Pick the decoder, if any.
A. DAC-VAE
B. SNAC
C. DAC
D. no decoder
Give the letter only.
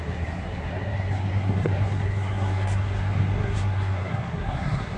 B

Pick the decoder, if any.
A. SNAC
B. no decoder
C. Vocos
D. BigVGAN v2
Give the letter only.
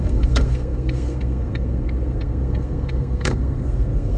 A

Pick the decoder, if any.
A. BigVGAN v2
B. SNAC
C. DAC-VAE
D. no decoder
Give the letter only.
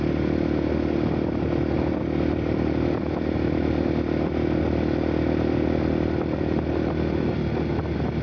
D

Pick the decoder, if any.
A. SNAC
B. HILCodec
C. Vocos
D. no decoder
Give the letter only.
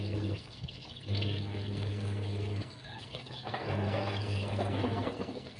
A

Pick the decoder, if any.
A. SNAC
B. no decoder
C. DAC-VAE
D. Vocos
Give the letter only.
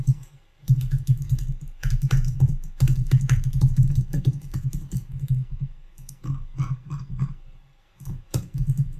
A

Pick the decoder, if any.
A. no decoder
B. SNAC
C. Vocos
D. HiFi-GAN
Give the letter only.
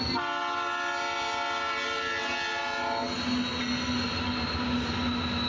A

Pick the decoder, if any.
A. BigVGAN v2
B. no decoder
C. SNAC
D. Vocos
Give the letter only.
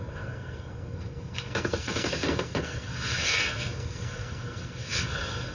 C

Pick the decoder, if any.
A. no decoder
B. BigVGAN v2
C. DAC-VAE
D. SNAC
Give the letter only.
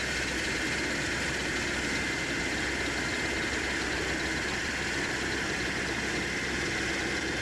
A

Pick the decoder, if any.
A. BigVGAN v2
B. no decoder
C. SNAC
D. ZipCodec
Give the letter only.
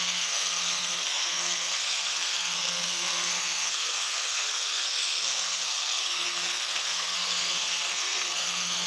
C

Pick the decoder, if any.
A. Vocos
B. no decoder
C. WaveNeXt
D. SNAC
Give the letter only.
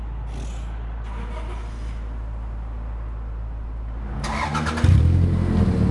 B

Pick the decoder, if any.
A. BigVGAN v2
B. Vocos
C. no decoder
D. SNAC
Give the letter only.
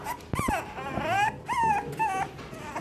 C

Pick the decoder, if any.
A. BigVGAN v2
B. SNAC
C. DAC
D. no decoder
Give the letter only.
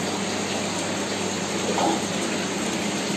D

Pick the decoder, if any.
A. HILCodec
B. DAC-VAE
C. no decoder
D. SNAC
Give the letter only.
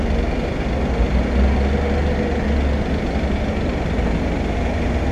C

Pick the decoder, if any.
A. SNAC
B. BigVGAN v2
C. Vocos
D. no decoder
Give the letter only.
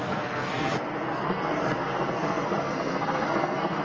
A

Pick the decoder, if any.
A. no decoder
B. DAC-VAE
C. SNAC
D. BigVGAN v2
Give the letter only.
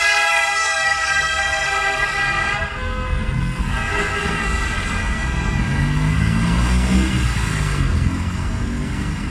C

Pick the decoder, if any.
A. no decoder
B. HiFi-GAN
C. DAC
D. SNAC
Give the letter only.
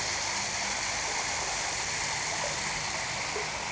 A